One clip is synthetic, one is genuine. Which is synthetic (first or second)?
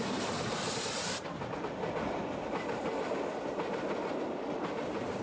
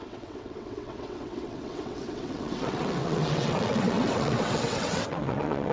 second